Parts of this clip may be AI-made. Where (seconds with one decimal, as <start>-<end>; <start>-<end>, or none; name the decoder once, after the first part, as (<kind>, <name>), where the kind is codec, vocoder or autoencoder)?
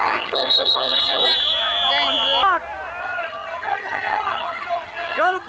0.0-1.2 (vocoder, HiFi-GAN); 3.0-5.5